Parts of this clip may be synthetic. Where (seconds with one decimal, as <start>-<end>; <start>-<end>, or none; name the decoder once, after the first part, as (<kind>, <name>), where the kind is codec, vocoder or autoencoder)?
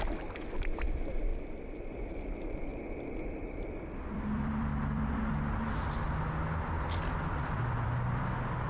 0.0-2.7 (vocoder, BigVGAN v2); 3.4-5.3; 7.2-8.7